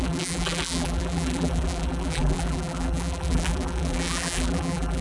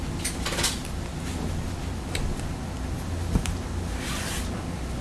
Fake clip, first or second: first